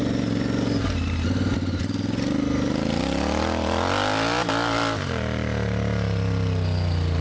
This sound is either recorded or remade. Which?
recorded